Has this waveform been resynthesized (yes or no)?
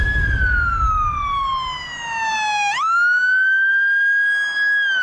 no